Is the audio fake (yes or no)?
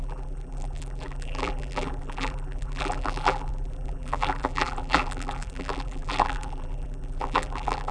yes